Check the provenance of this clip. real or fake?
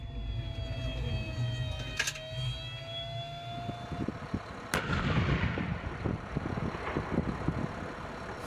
real